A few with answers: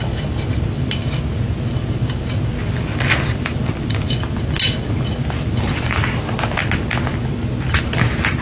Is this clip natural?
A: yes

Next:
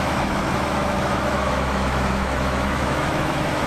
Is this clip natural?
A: no